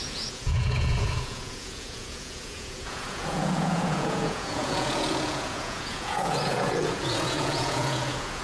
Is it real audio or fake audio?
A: fake